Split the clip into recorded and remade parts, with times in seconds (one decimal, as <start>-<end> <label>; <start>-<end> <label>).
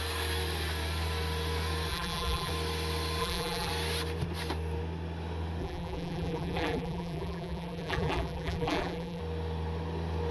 0.0-1.9 recorded; 1.9-2.5 remade; 2.5-3.2 recorded; 3.2-3.7 remade; 3.7-5.6 recorded; 5.6-9.2 remade; 9.2-10.3 recorded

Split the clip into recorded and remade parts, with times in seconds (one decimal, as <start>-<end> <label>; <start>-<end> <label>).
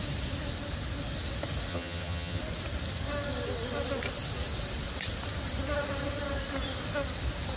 0.0-1.7 recorded; 1.7-2.4 remade; 2.4-7.6 recorded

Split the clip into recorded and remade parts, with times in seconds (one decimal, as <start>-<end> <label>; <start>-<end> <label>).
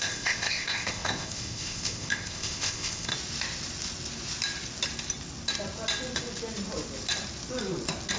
0.0-3.1 remade; 3.1-8.2 recorded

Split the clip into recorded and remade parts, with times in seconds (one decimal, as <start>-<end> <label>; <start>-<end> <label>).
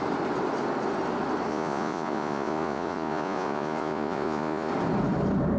0.0-1.5 recorded; 1.5-4.7 remade; 4.7-5.6 recorded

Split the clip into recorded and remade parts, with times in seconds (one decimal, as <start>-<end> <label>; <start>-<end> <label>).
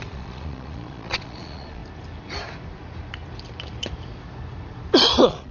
0.0-1.8 remade; 1.8-5.1 recorded; 5.1-5.5 remade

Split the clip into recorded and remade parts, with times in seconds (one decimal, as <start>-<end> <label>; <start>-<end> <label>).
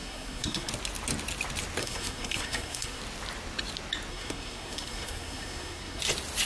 0.0-0.7 remade; 0.7-1.8 recorded; 1.8-3.0 remade; 3.0-4.1 recorded; 4.1-6.0 remade; 6.0-6.5 recorded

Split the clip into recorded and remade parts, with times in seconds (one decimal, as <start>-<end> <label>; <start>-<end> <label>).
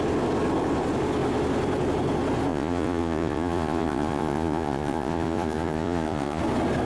0.0-2.5 recorded; 2.5-6.4 remade; 6.4-6.9 recorded